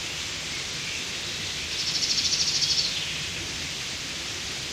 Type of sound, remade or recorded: recorded